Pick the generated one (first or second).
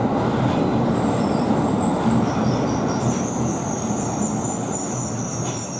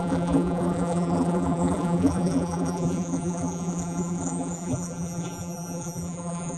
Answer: second